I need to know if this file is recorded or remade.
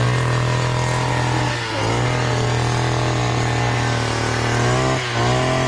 recorded